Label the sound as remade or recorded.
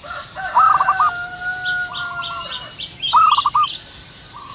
recorded